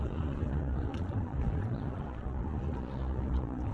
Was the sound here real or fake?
fake